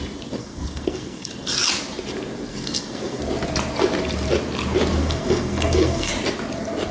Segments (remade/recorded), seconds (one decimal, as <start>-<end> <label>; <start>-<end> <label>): 0.0-0.4 recorded; 0.4-1.3 remade; 1.3-2.5 recorded; 2.5-3.2 remade; 3.2-5.0 recorded; 5.0-6.1 remade; 6.1-6.9 recorded